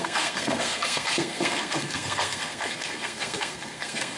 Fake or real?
fake